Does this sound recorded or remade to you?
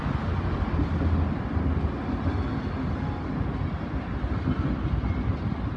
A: recorded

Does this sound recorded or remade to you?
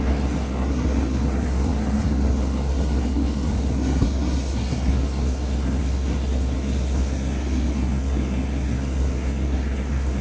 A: remade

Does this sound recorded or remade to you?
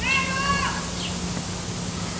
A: recorded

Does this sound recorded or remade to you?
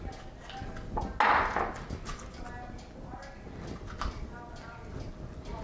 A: recorded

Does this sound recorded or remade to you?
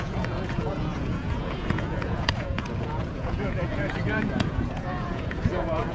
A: remade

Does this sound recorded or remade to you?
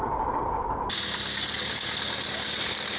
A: recorded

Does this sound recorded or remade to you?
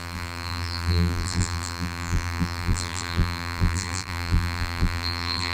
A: remade